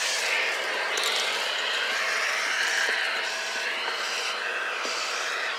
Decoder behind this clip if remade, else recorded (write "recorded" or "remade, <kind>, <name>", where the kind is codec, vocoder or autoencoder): recorded